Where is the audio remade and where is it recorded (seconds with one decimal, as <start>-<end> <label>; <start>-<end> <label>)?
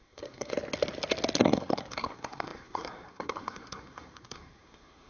0.0-0.5 remade; 0.5-1.4 recorded; 1.4-5.1 remade